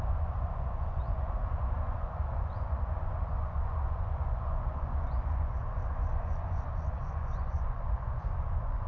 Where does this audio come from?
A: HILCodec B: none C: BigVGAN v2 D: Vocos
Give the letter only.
D